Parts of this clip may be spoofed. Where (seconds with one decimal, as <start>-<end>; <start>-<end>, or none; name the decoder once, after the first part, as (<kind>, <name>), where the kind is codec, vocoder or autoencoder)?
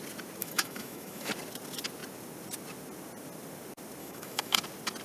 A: 0.4-1.3 (autoencoder, DAC-VAE); 4.0-4.6